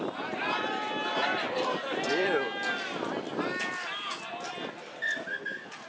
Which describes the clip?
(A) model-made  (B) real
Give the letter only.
B